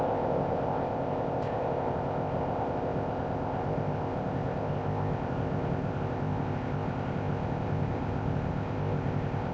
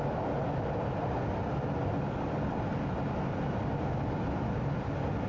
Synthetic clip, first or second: first